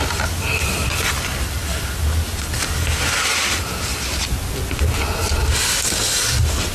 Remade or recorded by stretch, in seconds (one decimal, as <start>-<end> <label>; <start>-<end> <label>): 0.0-6.7 recorded